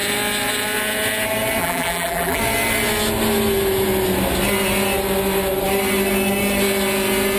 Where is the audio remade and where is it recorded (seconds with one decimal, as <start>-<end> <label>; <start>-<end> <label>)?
0.0-1.6 recorded; 1.6-2.4 remade; 2.4-7.4 recorded